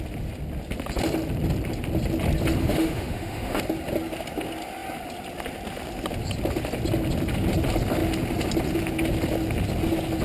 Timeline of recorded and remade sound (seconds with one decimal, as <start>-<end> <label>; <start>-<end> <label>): 0.0-2.6 recorded; 2.6-3.6 remade; 3.6-10.2 recorded

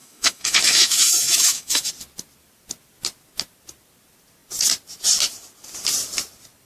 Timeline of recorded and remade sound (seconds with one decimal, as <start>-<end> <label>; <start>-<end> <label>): 0.0-1.9 remade; 1.9-6.7 recorded

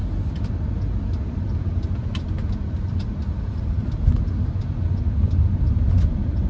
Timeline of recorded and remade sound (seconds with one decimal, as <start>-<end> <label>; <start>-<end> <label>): 0.0-6.5 recorded

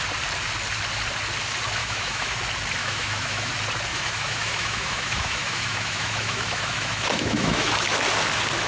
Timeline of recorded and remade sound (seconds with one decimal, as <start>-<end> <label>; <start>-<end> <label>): 0.0-1.8 recorded; 1.8-2.4 remade; 2.4-2.8 recorded; 2.8-3.5 remade; 3.5-3.9 recorded; 3.9-7.7 remade; 7.7-8.7 recorded

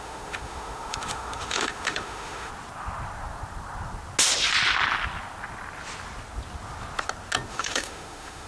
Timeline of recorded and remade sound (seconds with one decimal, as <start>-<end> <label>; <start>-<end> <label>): 0.0-2.5 remade; 2.5-7.5 recorded; 7.5-8.5 remade

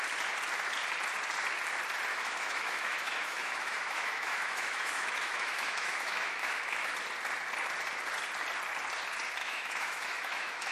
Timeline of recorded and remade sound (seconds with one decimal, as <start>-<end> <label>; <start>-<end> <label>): 0.0-2.1 recorded; 2.1-6.9 remade; 6.9-9.4 recorded; 9.4-10.7 remade

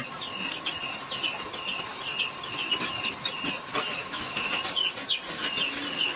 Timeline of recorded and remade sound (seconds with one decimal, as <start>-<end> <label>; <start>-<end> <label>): 0.0-4.0 recorded; 4.0-4.5 remade; 4.5-6.2 recorded

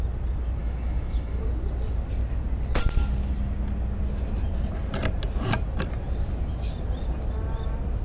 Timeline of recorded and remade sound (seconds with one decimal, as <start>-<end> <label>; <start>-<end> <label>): 0.0-0.6 recorded; 0.6-1.4 remade; 1.4-8.0 recorded